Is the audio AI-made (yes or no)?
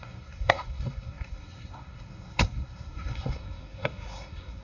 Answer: yes